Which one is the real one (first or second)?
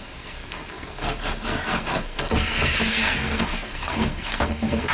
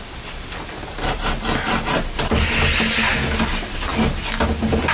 second